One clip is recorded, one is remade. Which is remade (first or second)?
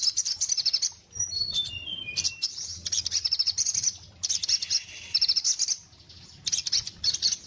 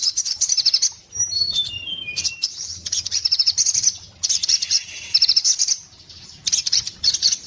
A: second